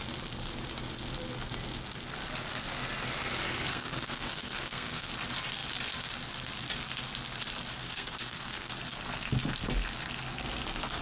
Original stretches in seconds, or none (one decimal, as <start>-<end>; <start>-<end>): 0.0-3.7; 5.1-7.8; 8.7-11.0